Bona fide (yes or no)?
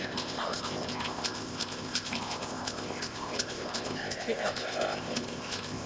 no